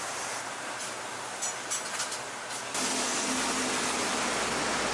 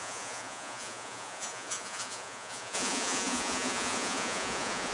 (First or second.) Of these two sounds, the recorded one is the first